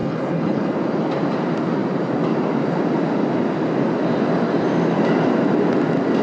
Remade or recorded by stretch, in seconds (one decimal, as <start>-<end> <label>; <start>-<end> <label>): 0.0-0.7 remade; 0.7-6.2 recorded